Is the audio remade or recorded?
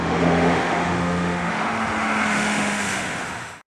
remade